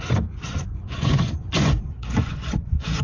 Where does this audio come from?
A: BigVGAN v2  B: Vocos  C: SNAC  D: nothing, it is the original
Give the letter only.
B